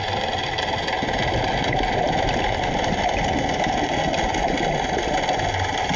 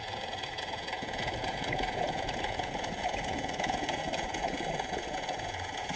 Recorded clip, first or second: first